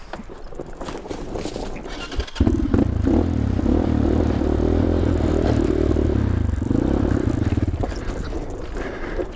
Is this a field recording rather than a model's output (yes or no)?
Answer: no